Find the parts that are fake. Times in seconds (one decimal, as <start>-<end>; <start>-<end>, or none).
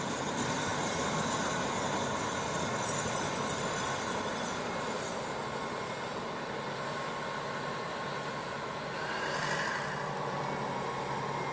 none